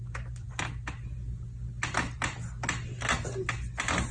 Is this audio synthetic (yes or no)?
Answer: no